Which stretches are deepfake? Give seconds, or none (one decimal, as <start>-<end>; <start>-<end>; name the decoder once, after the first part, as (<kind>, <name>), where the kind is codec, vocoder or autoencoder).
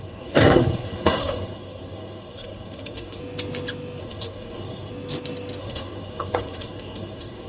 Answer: 0.0-3.2 (codec, SNAC); 4.0-4.9; 5.6-7.5